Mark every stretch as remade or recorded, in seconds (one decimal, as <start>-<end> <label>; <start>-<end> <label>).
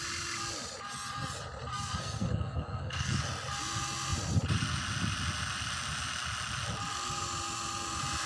0.0-1.7 recorded; 1.7-3.2 remade; 3.2-8.3 recorded